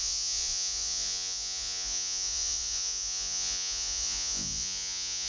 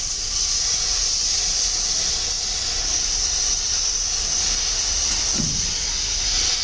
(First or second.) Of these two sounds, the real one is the second